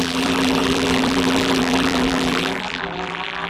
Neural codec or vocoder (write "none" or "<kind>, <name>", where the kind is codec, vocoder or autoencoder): vocoder, BigVGAN v2